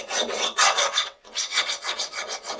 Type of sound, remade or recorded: remade